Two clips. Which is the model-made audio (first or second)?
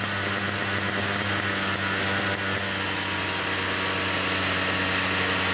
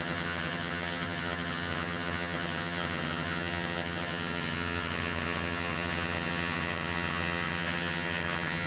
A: second